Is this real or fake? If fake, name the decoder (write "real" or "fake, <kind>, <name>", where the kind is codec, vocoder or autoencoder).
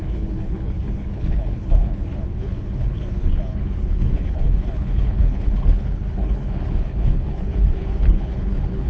fake, codec, HILCodec